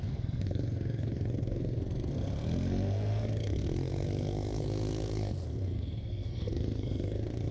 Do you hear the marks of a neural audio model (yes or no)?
yes